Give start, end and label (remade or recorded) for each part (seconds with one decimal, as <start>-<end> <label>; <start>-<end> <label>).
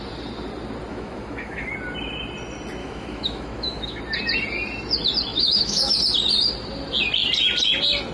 0.0-0.9 recorded; 0.9-1.7 remade; 1.7-2.8 recorded; 2.8-4.0 remade; 4.0-5.3 recorded; 5.3-6.0 remade; 6.0-8.1 recorded